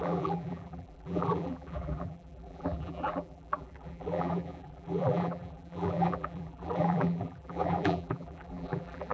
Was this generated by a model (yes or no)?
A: yes